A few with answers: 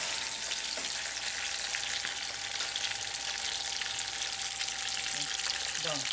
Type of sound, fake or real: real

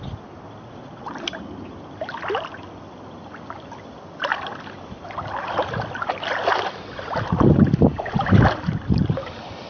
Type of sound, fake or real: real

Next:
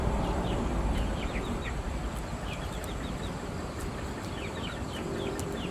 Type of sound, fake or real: fake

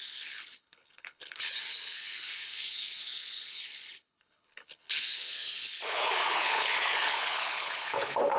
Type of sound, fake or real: fake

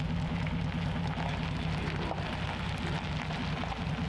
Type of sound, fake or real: real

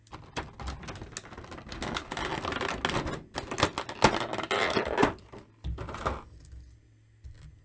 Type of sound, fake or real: real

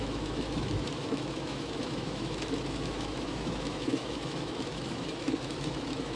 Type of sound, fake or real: fake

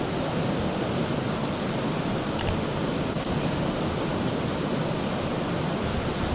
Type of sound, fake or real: real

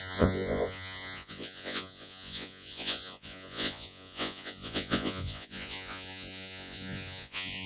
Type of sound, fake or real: fake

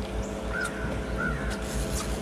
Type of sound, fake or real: real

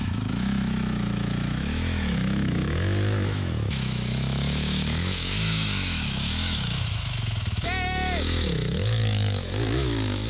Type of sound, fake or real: fake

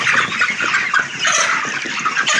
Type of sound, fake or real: real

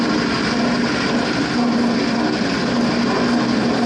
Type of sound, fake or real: real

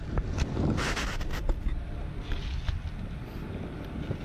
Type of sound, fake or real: real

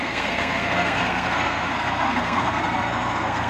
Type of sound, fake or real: fake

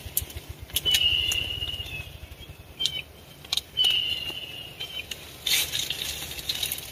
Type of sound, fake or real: real